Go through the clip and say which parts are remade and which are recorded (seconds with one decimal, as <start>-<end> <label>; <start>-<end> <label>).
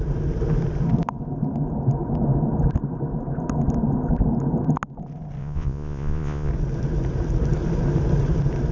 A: 0.0-5.4 recorded; 5.4-6.5 remade; 6.5-8.7 recorded